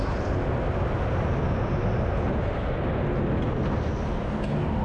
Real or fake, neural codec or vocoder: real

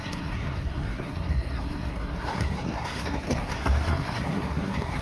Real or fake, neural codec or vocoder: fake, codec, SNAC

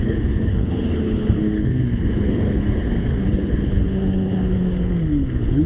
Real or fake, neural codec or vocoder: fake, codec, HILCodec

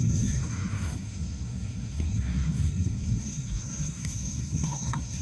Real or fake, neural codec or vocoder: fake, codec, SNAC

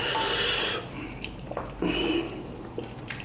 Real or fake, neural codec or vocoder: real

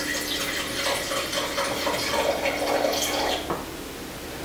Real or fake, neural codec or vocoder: real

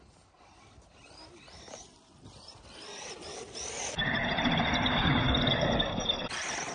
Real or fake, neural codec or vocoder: real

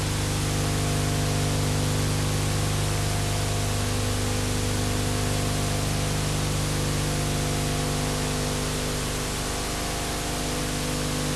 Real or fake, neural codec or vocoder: real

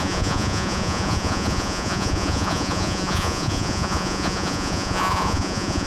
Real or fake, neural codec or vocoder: fake, vocoder, Vocos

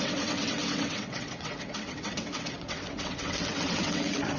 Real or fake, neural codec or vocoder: fake, vocoder, WaveNeXt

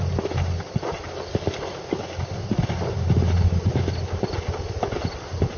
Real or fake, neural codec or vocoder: real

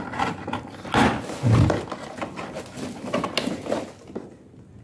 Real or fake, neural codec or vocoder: real